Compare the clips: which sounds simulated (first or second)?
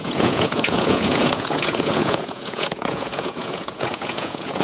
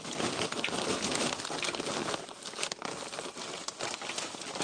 first